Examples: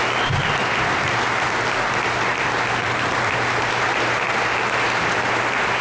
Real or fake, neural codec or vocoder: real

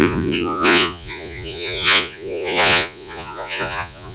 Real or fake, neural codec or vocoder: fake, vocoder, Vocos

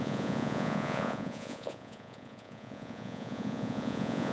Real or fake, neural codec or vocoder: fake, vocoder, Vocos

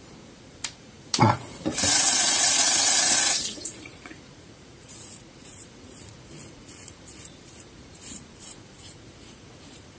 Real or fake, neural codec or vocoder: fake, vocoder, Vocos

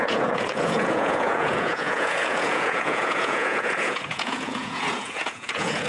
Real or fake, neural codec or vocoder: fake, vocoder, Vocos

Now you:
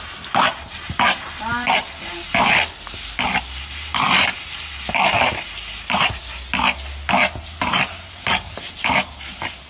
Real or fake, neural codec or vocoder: real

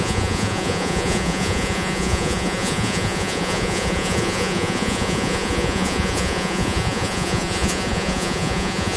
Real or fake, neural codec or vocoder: fake, vocoder, Vocos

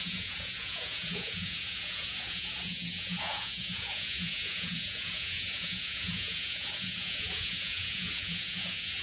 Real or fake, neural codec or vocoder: fake, vocoder, Vocos